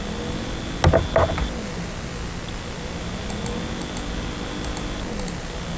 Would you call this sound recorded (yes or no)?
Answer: yes